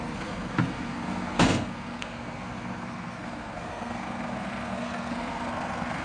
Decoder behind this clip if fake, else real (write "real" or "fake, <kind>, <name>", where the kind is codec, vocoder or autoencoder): fake, codec, SNAC